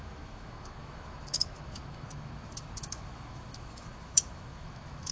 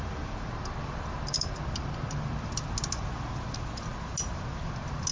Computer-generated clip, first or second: first